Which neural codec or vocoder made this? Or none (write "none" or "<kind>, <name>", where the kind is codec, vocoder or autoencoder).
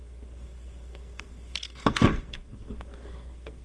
codec, SNAC